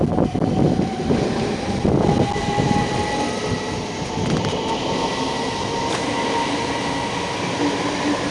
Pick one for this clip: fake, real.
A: real